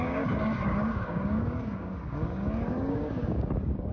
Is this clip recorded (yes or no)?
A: no